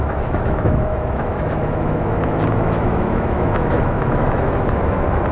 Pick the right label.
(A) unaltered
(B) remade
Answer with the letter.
B